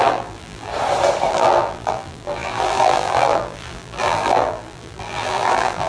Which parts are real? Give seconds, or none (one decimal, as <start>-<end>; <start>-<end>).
0.7-1.3